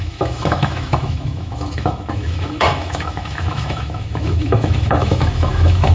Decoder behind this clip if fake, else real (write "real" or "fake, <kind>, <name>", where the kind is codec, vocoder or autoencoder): fake, autoencoder, DAC-VAE